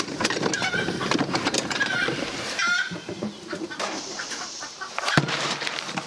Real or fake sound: fake